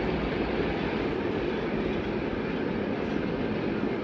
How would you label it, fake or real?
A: real